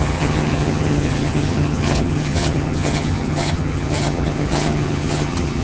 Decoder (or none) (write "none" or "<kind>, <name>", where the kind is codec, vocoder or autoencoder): vocoder, HiFi-GAN